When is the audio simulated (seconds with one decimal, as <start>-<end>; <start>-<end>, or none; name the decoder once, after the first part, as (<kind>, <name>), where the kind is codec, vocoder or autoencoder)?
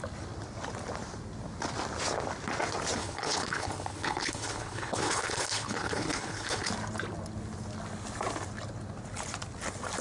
3.0-6.7 (codec, HILCodec)